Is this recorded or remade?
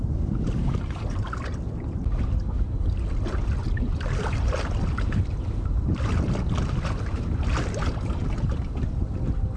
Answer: recorded